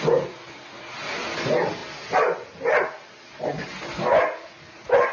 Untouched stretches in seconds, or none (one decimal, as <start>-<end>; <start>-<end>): 0.0-5.1